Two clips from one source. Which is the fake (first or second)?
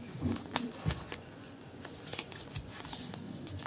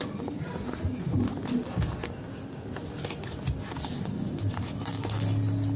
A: first